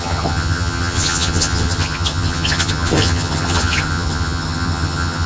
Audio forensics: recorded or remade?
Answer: remade